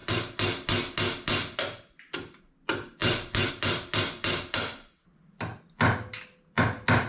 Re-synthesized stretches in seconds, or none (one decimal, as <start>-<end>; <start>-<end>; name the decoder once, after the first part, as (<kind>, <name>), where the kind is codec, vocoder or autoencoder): none